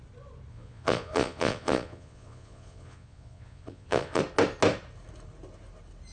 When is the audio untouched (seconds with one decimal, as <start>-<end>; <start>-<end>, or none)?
0.0-0.5; 4.2-6.1